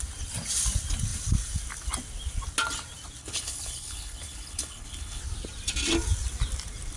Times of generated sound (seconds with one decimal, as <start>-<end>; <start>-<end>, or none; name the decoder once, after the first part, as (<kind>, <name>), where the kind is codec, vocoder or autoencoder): 3.2-5.2 (codec, HILCodec)